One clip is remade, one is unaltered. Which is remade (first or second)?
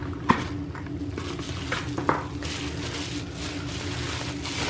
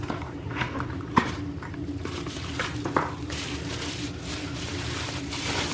second